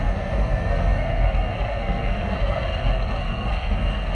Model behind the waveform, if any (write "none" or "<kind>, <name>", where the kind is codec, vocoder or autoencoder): codec, SNAC